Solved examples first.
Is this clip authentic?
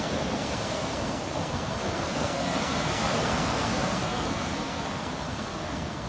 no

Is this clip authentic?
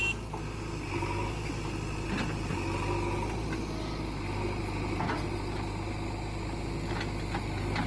yes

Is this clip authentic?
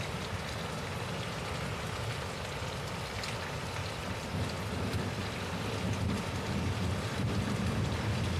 yes